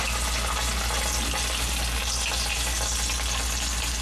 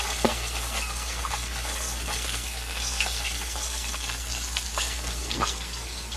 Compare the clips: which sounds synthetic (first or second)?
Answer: second